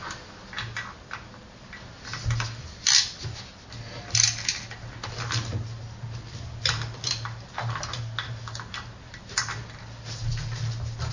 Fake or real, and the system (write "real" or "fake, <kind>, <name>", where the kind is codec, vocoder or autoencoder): real